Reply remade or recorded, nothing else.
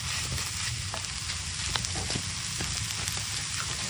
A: recorded